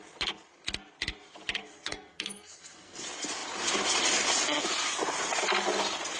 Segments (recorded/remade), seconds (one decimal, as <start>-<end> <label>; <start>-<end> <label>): 0.0-1.6 recorded; 1.6-3.0 remade; 3.0-6.2 recorded